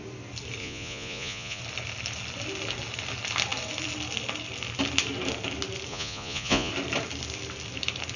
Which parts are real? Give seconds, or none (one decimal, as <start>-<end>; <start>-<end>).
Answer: 0.0-0.6; 1.6-5.9; 6.7-8.2